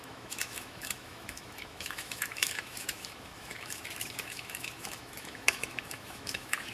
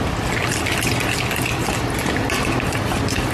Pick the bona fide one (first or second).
second